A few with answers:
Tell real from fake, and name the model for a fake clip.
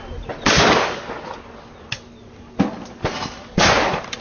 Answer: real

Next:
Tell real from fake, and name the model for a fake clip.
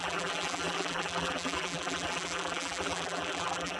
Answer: fake, vocoder, BigVGAN v2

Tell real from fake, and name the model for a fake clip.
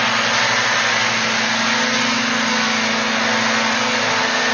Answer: real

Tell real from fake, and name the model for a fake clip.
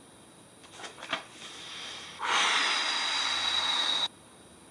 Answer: real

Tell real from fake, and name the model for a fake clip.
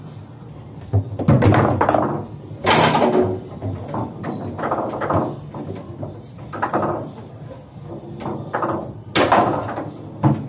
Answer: real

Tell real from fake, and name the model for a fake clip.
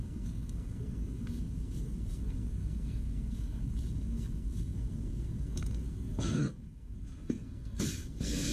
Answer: fake, codec, SNAC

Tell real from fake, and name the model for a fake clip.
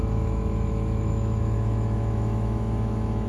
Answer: fake, autoencoder, DAC-VAE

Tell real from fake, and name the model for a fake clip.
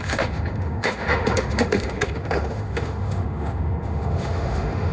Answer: fake, autoencoder, DAC-VAE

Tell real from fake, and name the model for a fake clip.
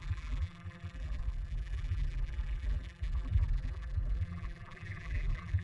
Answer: fake, vocoder, BigVGAN v2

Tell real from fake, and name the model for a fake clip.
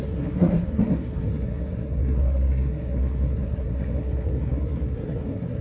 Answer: fake, codec, SNAC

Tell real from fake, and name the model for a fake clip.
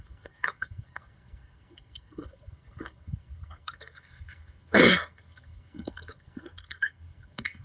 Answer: fake, codec, SNAC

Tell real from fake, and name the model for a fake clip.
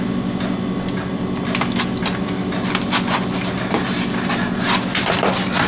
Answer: real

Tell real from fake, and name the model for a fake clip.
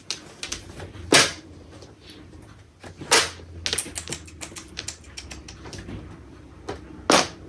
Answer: real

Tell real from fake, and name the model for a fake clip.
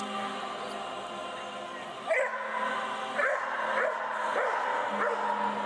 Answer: real